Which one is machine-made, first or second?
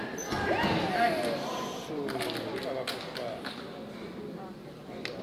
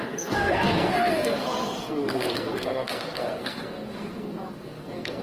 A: second